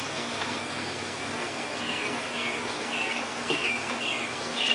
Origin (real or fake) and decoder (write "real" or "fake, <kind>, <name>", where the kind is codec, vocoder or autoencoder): fake, codec, SNAC